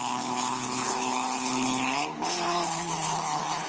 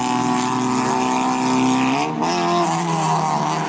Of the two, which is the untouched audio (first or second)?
second